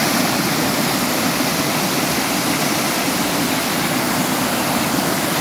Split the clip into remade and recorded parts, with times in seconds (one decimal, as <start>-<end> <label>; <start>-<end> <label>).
0.0-5.4 recorded